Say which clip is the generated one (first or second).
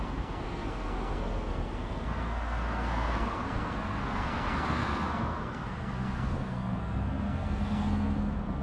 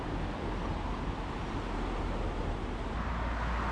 first